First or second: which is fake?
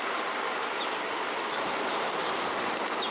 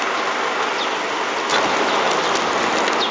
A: first